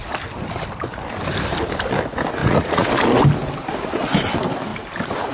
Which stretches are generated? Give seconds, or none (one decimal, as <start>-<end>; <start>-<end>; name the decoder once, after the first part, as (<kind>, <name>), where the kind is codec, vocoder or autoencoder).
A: 2.4-2.9 (vocoder, Vocos)

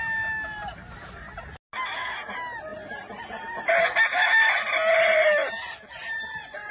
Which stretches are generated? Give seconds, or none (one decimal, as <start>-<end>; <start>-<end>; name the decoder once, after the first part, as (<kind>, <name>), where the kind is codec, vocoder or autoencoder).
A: none

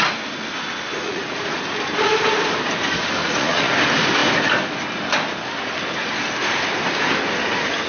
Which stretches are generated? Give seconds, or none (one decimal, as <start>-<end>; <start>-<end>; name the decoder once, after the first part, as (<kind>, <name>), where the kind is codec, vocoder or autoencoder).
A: 1.0-1.6 (vocoder, Vocos); 3.2-3.7